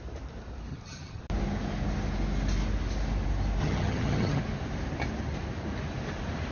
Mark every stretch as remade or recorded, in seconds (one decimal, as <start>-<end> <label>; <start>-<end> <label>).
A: 0.0-0.7 recorded; 0.7-1.2 remade; 1.2-3.6 recorded; 3.6-4.4 remade; 4.4-6.5 recorded